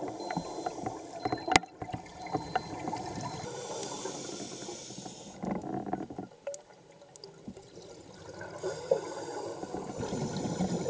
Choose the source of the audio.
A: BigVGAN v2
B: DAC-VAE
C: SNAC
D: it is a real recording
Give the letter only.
D